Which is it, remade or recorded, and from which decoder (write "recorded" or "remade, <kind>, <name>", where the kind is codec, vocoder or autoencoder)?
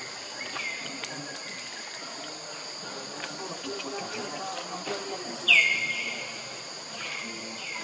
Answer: recorded